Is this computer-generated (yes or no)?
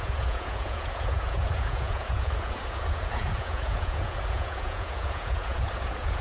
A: yes